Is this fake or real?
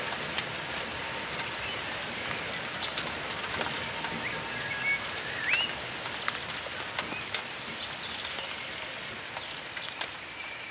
real